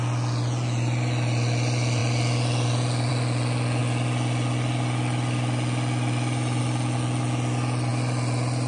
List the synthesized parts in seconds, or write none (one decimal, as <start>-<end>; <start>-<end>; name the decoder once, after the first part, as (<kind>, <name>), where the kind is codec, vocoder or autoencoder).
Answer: none